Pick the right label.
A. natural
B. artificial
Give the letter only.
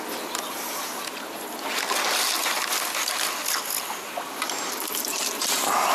A